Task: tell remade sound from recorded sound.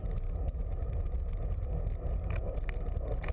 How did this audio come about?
recorded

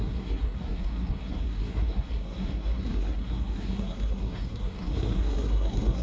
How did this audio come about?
remade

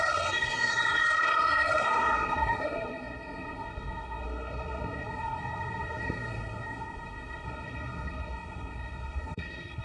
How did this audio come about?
remade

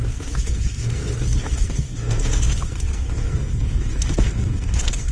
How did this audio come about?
remade